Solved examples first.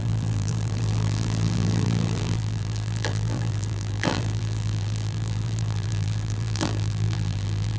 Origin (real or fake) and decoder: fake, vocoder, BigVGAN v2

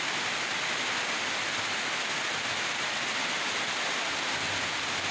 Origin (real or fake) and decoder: real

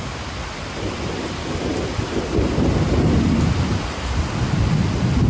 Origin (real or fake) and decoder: real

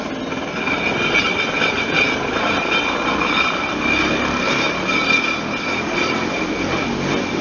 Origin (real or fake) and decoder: real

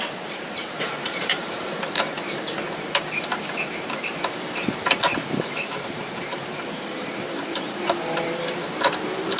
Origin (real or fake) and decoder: fake, vocoder, BigVGAN v2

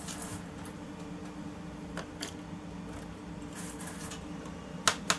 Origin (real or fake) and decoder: real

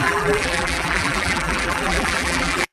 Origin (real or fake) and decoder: fake, vocoder, BigVGAN v2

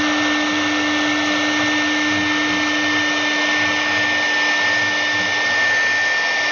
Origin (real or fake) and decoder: real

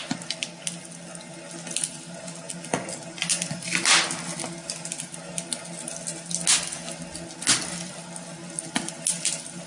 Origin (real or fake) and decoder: real